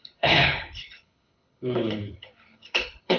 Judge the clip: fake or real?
fake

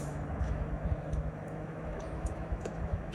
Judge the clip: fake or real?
fake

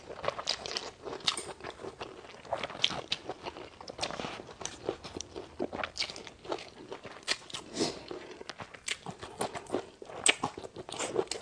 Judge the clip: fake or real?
real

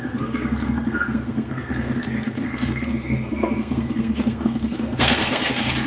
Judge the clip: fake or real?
fake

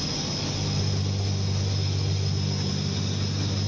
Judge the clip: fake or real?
real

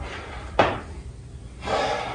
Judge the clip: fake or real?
real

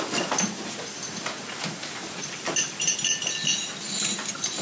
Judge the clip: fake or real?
real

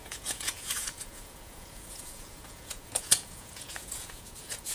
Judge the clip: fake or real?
fake